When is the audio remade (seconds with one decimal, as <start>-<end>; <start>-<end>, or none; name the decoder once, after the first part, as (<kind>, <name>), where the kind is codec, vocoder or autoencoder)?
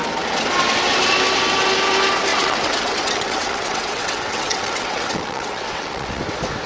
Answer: 2.3-6.2 (vocoder, WaveNeXt)